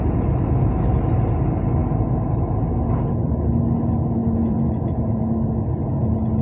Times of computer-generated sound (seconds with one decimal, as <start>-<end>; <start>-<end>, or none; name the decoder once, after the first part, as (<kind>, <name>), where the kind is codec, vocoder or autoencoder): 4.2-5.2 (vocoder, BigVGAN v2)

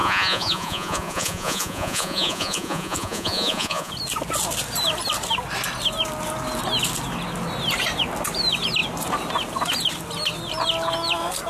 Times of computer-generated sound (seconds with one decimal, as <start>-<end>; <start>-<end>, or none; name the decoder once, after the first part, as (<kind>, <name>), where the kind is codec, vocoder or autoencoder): 0.0-3.9 (vocoder, Vocos)

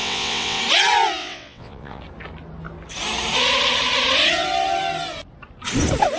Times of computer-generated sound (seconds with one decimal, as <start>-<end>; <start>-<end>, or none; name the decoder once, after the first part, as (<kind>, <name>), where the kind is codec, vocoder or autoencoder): 0.0-0.6 (vocoder, WaveNeXt); 1.2-2.0

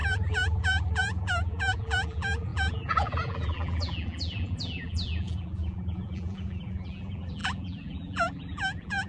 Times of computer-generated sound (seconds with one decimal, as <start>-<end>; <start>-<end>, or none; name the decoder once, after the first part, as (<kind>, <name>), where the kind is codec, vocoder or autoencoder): 0.0-9.1 (vocoder, BigVGAN v2)

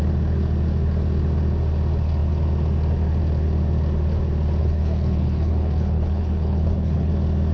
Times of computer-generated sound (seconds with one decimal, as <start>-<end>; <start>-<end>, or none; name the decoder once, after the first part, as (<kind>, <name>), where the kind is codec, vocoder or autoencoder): 4.6-7.1 (codec, HILCodec)